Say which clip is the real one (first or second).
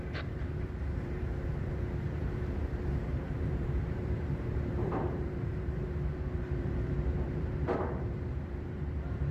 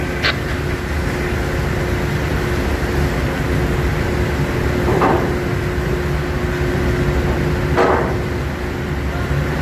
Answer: second